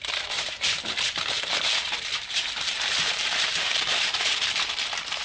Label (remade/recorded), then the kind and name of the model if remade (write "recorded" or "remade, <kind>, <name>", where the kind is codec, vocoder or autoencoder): remade, vocoder, BigVGAN v2